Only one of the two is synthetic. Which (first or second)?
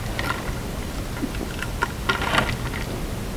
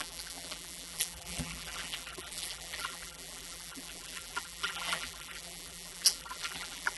second